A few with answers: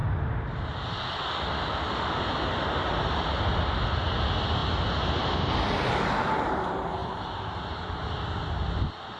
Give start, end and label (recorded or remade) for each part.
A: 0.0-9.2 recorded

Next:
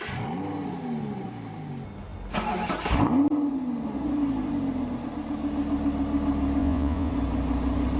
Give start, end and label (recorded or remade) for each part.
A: 0.0-6.6 recorded; 6.6-7.1 remade; 7.1-8.0 recorded

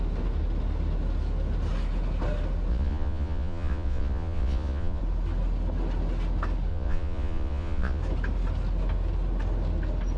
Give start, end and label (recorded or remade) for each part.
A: 0.0-2.7 recorded; 2.7-5.0 remade; 5.0-6.7 recorded; 6.7-8.0 remade; 8.0-10.2 recorded

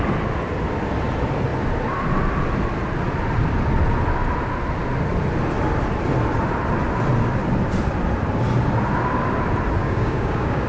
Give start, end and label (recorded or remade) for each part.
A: 0.0-9.8 recorded; 9.8-10.7 remade

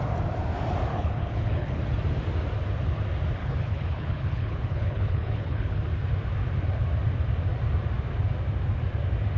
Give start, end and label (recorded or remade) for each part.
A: 0.0-0.9 recorded; 0.9-1.8 remade; 1.8-3.4 recorded; 3.4-5.8 remade; 5.8-9.4 recorded

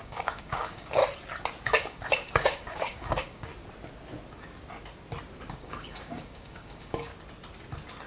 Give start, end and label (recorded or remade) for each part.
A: 0.0-1.0 remade; 1.0-1.6 recorded; 1.6-3.5 remade; 3.5-5.5 recorded; 5.5-7.1 remade; 7.1-8.1 recorded

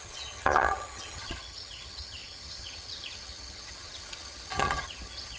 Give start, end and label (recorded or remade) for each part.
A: 0.0-5.4 remade

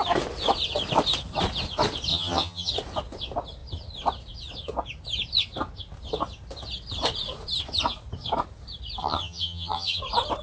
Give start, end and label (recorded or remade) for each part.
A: 0.0-2.1 recorded; 2.1-2.7 remade; 2.7-9.0 recorded; 9.0-10.0 remade; 10.0-10.4 recorded